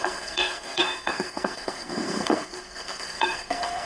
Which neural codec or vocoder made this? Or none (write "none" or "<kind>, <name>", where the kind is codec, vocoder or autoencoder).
codec, SNAC